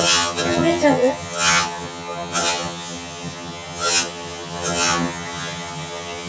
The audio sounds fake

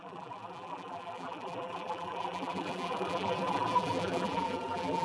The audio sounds fake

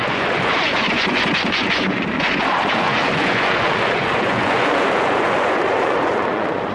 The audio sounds fake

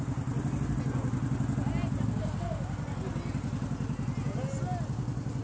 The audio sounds real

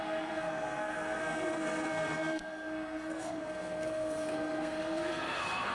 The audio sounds fake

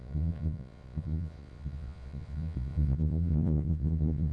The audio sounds fake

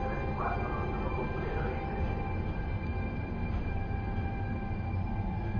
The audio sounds real